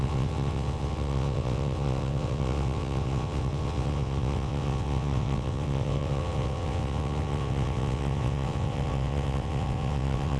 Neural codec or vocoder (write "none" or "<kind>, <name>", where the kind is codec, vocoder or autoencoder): vocoder, WaveNeXt